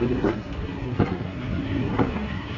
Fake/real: fake